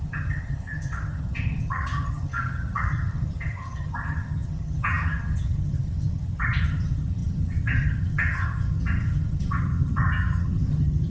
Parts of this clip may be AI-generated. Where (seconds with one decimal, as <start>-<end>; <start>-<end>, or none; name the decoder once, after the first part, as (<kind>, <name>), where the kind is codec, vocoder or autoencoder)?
0.0-11.1 (vocoder, HiFi-GAN)